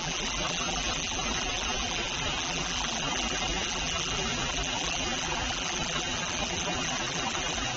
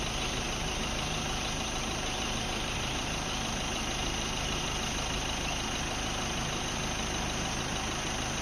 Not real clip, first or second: first